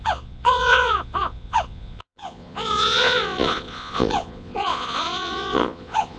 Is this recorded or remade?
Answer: remade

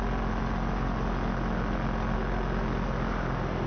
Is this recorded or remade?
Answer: recorded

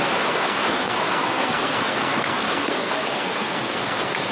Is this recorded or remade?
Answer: remade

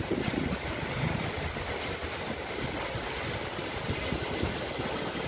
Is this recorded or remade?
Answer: recorded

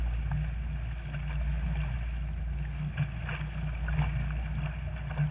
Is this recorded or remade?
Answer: recorded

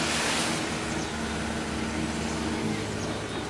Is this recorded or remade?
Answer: recorded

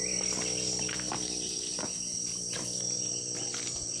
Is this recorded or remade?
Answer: recorded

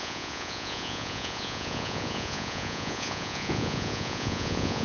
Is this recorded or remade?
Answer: remade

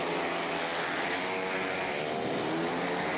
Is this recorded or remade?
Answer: recorded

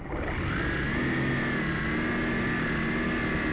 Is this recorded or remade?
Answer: recorded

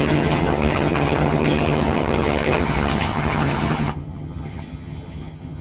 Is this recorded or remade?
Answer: remade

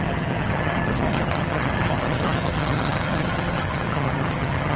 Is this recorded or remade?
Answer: remade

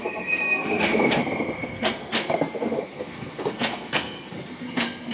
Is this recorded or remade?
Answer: remade